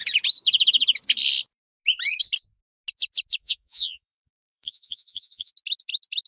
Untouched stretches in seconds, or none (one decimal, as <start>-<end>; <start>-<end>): 0.0-3.4; 5.5-6.3